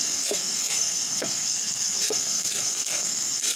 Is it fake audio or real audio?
fake